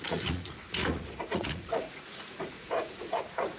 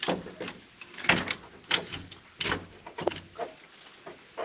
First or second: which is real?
second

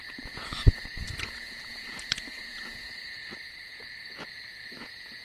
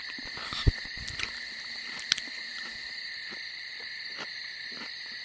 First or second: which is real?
second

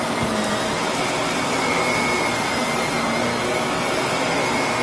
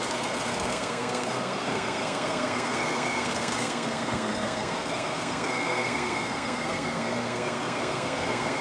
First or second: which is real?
first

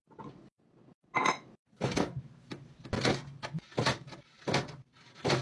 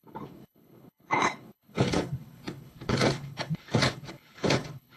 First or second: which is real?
first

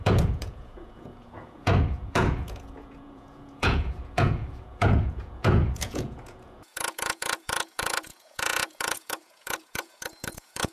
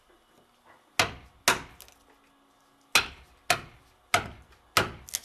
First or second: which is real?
second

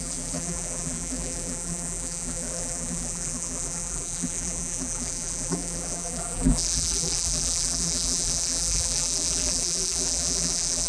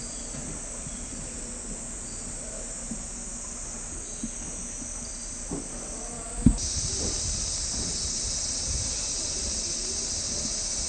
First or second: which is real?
second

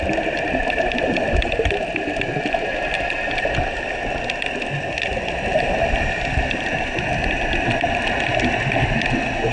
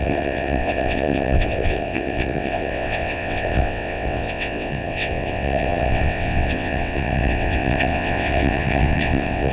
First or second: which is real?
first